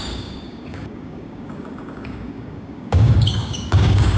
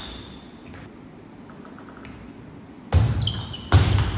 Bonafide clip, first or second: second